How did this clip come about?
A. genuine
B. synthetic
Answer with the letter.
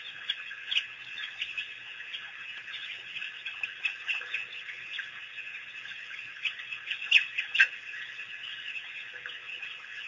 A